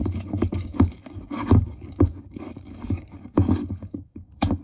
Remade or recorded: remade